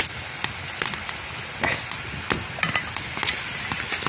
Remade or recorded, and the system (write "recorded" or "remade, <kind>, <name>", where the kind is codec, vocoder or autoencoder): recorded